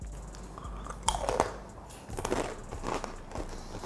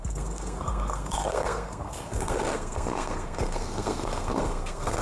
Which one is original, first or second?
first